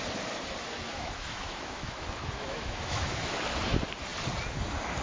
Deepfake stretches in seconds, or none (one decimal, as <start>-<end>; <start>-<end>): 0.9-3.4